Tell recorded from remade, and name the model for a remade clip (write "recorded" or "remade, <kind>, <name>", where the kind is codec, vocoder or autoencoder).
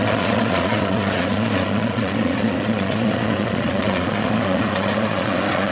remade, vocoder, Vocos